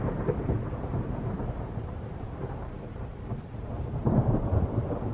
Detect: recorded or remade remade